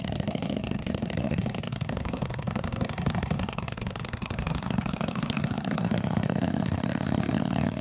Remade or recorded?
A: remade